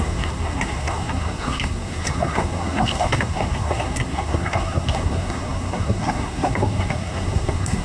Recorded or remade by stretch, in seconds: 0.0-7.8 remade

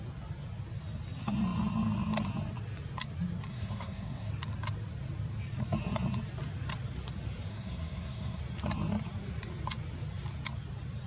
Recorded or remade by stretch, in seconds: 0.0-3.5 recorded; 3.5-4.3 remade; 4.3-7.5 recorded; 7.5-8.4 remade; 8.4-11.1 recorded